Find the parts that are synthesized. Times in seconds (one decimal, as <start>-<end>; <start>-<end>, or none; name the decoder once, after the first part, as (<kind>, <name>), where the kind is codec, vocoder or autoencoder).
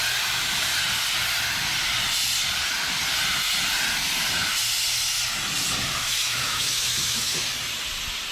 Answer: 6.1-7.5 (autoencoder, DAC-VAE)